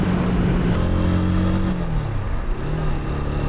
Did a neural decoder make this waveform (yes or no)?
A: no